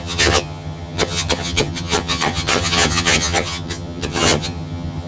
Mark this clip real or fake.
fake